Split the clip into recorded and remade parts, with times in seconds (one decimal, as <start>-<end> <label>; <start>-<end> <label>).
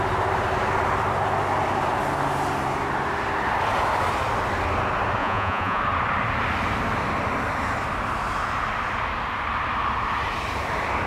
0.0-5.2 recorded; 5.2-5.8 remade; 5.8-11.1 recorded